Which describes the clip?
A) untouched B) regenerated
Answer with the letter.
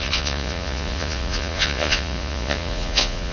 B